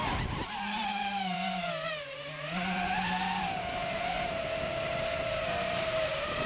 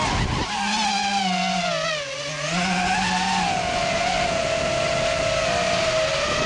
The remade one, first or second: first